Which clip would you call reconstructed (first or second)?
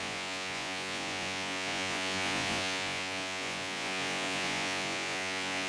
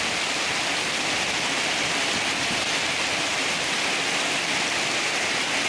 first